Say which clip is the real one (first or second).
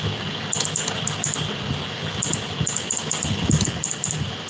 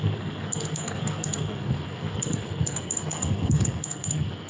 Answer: first